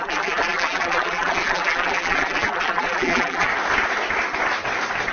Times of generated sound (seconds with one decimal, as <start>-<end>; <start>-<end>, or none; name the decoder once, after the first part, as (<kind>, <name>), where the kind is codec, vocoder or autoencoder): 0.0-3.5 (vocoder, BigVGAN v2)